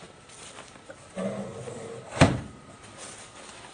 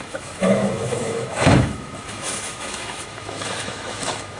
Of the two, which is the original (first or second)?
first